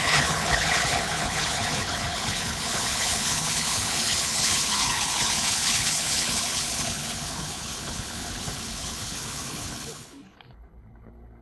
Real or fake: fake